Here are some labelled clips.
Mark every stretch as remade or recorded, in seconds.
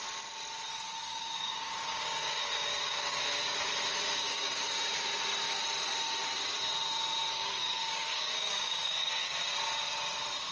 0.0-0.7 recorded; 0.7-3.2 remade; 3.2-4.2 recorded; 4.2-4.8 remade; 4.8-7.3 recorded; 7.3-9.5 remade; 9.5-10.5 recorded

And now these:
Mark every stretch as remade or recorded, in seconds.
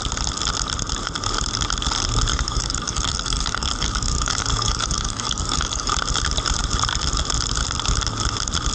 0.0-2.3 recorded; 2.3-5.9 remade; 5.9-8.7 recorded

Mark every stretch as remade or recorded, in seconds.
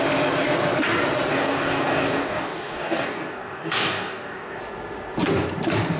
0.0-1.3 recorded; 1.3-4.6 remade; 4.6-6.0 recorded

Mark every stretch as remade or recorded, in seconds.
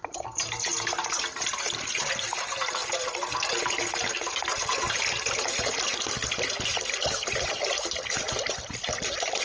0.0-9.4 recorded